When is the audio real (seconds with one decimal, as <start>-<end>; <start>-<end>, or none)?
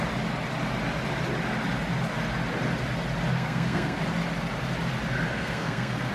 0.0-3.3; 4.0-5.3